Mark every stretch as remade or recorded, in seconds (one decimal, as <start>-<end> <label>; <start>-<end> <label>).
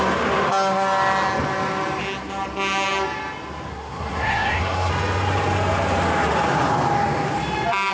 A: 0.0-3.7 recorded; 3.7-4.9 remade; 4.9-7.9 recorded